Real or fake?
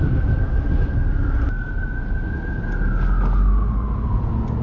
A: real